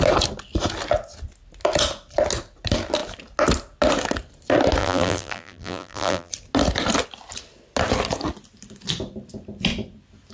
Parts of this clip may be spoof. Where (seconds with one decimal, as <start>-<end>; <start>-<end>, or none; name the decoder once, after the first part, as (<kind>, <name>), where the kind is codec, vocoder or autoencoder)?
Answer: 4.8-6.3 (vocoder, BigVGAN v2)